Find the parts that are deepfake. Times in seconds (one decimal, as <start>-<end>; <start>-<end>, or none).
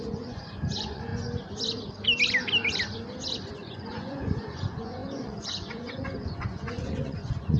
0.0-1.1; 3.5-7.6